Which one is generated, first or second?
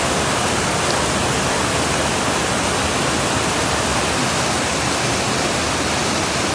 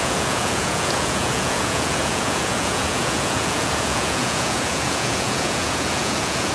second